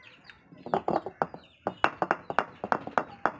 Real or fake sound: real